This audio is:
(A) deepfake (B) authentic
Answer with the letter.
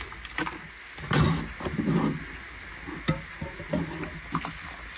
B